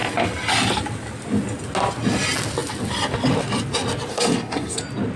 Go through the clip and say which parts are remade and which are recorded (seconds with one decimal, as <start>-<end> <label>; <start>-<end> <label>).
0.0-4.1 recorded; 4.1-4.8 remade; 4.8-5.2 recorded

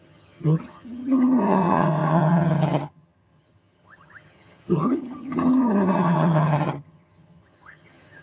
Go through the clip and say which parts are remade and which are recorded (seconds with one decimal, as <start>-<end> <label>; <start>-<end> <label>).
0.0-8.2 remade

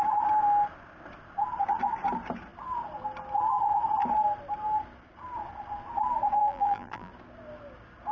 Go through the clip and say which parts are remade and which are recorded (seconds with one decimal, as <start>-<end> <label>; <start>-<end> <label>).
0.0-6.4 recorded; 6.4-7.1 remade; 7.1-8.1 recorded